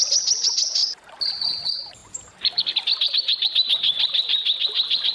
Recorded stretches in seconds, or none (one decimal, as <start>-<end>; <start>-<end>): 0.0-2.0